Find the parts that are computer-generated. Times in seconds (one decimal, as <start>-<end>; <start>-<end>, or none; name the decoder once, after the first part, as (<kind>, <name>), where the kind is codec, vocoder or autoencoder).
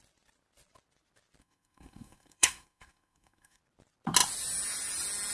1.4-3.6 (codec, SNAC)